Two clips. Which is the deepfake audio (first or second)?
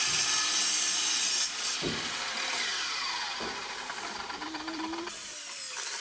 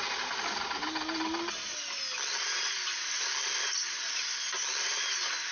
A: first